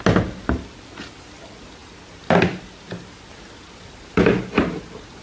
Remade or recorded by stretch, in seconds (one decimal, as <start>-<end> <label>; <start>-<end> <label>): 0.0-5.2 recorded